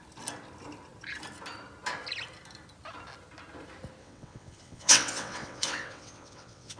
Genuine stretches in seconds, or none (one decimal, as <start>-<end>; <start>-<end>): 0.0-4.0